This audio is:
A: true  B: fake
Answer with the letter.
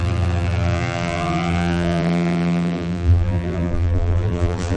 B